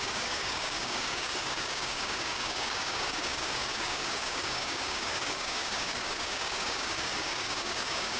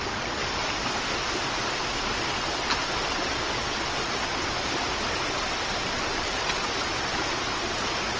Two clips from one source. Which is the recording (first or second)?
second